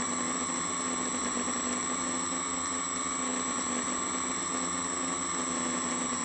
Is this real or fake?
real